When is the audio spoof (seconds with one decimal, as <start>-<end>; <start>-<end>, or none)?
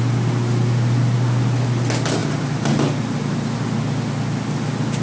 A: 2.2-3.6